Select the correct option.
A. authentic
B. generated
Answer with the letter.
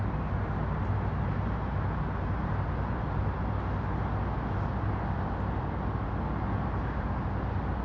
A